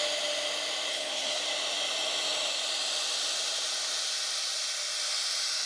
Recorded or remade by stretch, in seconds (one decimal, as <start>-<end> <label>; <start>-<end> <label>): 0.0-0.9 recorded; 0.9-1.4 remade; 1.4-5.7 recorded

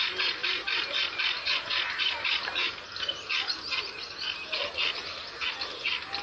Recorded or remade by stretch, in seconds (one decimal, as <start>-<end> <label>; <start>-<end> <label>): 0.0-6.2 recorded